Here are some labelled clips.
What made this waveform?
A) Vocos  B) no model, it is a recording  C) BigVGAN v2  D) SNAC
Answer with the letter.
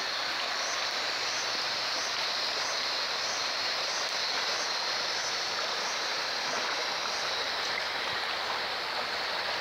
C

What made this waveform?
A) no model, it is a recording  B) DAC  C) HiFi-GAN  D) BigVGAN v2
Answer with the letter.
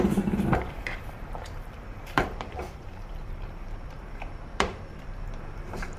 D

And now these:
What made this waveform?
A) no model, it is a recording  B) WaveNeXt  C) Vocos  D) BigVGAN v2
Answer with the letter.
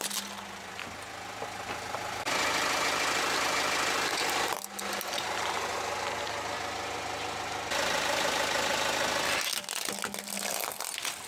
A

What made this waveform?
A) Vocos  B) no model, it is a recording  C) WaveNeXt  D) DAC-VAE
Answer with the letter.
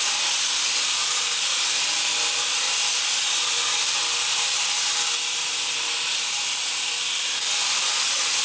B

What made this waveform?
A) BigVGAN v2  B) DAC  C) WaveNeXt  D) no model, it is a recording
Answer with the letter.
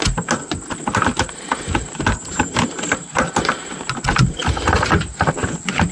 D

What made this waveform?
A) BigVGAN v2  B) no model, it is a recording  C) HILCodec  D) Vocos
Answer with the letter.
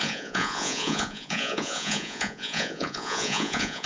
D